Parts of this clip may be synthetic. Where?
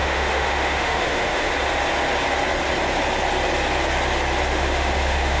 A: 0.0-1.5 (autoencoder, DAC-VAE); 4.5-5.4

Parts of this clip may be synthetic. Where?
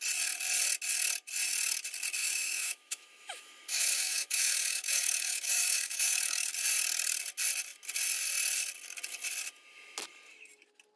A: 2.2-6.5 (autoencoder, DAC-VAE)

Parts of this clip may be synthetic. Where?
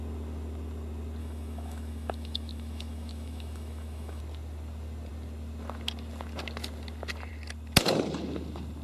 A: 1.2-4.2 (autoencoder, DAC-VAE)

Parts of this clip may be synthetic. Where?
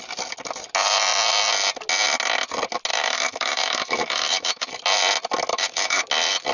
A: 2.9-4.7 (autoencoder, DAC-VAE); 5.5-6.0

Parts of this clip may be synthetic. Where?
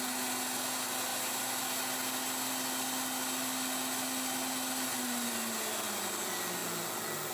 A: none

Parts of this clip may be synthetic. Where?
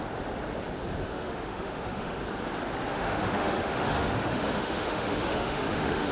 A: 1.0-2.2 (autoencoder, DAC-VAE); 2.9-6.1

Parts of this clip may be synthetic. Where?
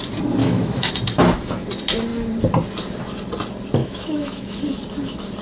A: 0.4-0.9 (autoencoder, DAC-VAE); 3.8-4.6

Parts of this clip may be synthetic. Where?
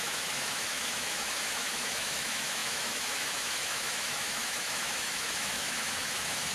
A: 0.0-6.5 (autoencoder, DAC-VAE)